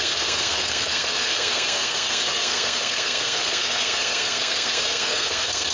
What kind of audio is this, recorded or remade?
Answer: remade